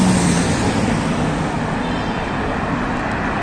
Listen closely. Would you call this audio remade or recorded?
recorded